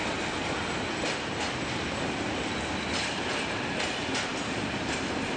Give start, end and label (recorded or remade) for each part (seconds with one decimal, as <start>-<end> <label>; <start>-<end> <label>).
0.0-5.4 recorded